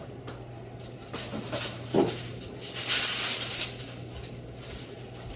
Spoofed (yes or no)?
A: no